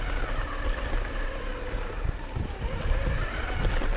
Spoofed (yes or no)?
no